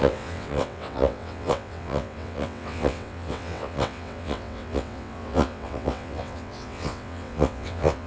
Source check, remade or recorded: remade